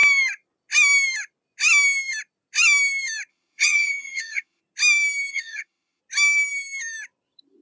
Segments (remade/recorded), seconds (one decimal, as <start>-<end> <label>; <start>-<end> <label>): 0.0-3.3 recorded; 3.3-4.6 remade; 4.6-5.3 recorded; 5.3-6.0 remade; 6.0-7.6 recorded